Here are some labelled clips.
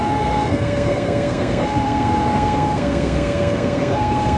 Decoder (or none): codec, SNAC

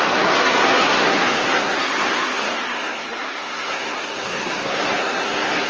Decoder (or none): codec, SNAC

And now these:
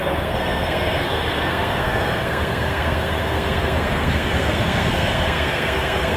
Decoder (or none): codec, SNAC